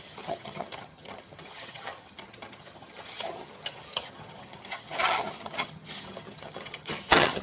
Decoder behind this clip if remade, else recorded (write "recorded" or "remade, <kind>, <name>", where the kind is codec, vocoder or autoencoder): remade, vocoder, HiFi-GAN